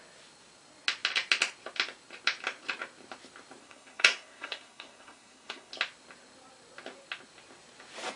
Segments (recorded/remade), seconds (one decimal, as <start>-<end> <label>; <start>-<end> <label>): 0.0-3.6 recorded; 3.6-5.7 remade; 5.7-8.2 recorded